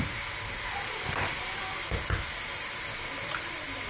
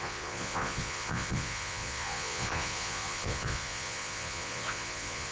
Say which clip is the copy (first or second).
second